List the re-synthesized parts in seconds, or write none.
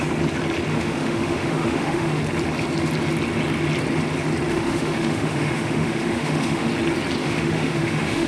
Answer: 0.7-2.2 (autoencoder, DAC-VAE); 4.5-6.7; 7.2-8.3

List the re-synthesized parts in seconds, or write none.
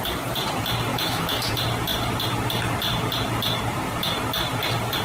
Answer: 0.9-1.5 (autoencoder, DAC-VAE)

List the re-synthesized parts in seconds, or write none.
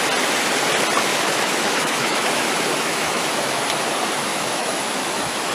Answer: 1.1-3.6 (autoencoder, DAC-VAE); 4.3-5.5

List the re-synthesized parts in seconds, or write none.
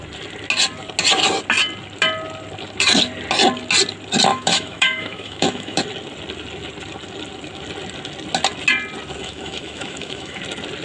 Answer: 4.3-5.8 (autoencoder, DAC-VAE); 9.2-10.4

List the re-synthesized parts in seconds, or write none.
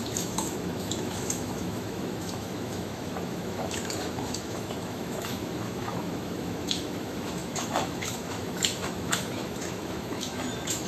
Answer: 0.0-10.9 (autoencoder, DAC-VAE)